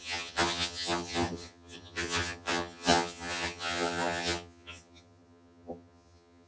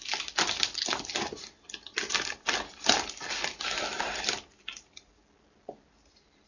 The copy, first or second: first